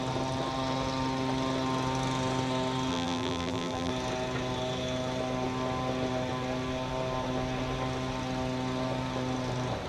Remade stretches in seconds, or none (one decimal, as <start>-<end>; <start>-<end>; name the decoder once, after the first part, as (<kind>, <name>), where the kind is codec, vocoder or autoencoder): 2.9-3.9 (vocoder, BigVGAN v2)